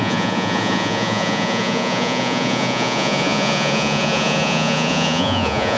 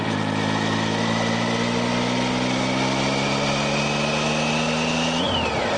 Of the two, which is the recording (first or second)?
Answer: second